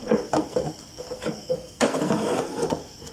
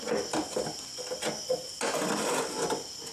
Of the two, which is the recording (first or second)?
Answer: second